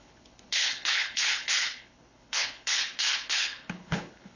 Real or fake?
fake